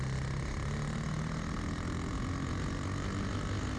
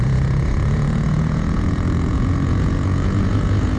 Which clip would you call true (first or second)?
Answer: first